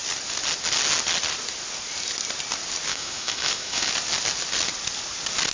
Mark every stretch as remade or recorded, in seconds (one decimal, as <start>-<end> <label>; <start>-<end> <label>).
0.0-2.9 recorded; 2.9-3.9 remade; 3.9-5.5 recorded